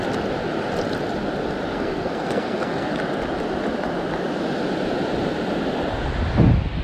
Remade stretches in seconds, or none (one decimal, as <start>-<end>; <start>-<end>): 1.7-2.9